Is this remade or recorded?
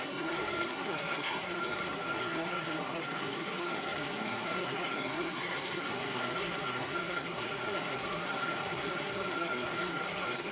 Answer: remade